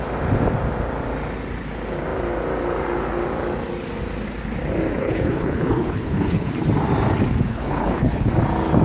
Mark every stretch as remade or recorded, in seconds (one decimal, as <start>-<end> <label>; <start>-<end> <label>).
0.0-4.9 recorded; 4.9-6.5 remade; 6.5-7.5 recorded; 7.5-8.3 remade; 8.3-8.8 recorded